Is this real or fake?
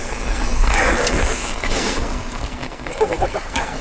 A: fake